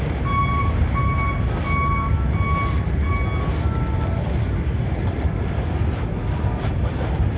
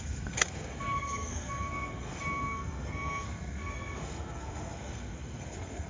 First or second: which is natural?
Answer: first